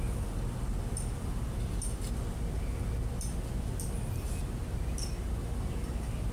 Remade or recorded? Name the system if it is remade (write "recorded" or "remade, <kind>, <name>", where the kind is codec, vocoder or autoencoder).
recorded